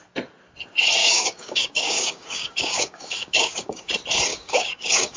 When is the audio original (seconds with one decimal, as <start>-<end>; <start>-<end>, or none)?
0.0-1.0; 3.9-4.3